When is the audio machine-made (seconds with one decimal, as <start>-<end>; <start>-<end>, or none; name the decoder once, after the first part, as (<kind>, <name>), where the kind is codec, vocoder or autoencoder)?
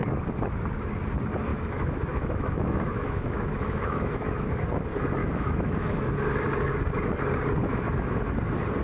1.5-4.7 (autoencoder, DAC-VAE); 5.2-6.1; 7.6-8.2